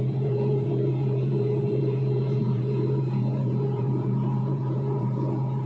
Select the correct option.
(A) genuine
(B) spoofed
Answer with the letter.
B